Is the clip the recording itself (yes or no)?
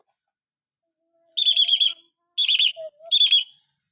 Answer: yes